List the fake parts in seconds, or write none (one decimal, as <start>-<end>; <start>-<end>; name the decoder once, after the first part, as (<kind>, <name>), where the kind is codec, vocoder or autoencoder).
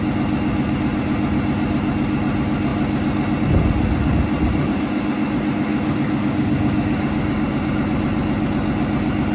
5.7-7.7 (codec, DAC)